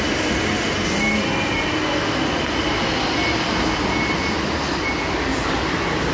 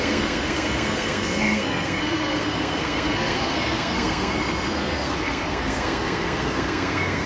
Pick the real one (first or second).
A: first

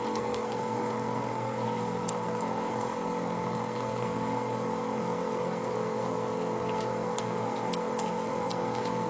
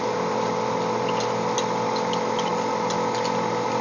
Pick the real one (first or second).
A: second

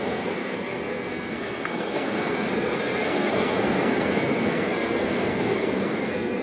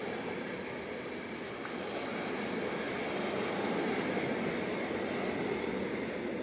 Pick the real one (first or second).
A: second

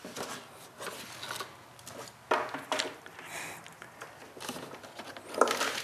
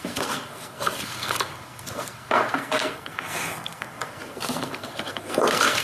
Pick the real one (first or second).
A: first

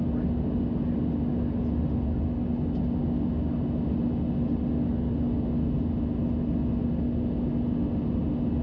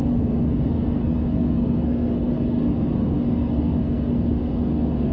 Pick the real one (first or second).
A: first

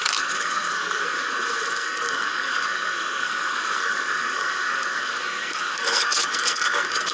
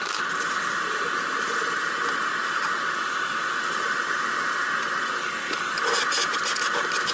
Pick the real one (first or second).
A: second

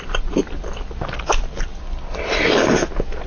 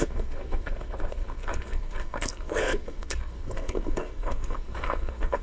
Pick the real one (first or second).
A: first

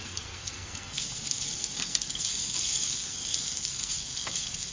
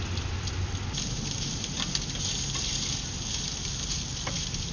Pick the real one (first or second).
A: second